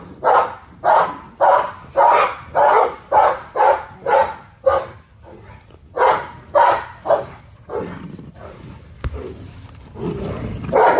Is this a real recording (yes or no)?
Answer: yes